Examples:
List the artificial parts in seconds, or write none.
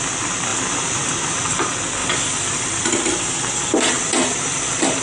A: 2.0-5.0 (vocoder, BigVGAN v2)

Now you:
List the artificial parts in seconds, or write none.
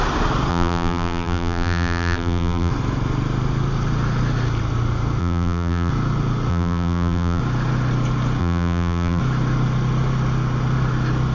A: 0.5-2.7 (vocoder, BigVGAN v2); 5.2-5.9; 6.5-7.4; 8.4-9.2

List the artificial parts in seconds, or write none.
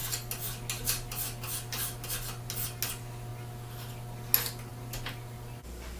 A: none